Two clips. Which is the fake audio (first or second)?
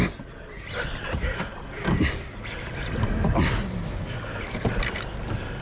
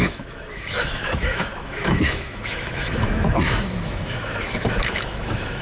second